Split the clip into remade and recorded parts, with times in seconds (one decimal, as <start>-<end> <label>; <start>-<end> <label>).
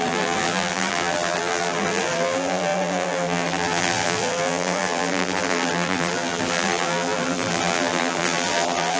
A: 0.0-9.0 remade